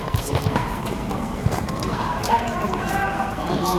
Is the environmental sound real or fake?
fake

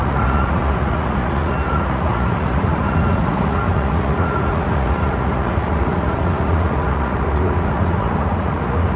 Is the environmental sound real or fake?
fake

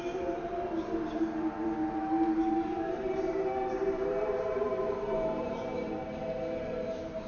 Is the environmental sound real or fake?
fake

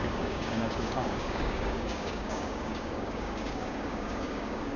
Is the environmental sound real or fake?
fake